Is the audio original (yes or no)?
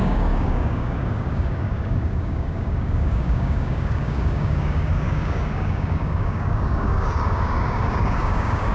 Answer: no